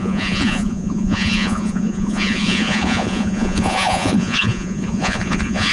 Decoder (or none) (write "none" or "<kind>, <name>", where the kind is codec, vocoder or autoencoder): vocoder, Vocos